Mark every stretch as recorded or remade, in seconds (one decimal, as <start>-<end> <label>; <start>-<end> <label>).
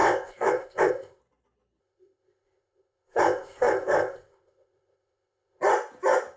0.0-1.2 remade; 1.2-1.8 recorded; 1.8-5.6 remade; 5.6-6.4 recorded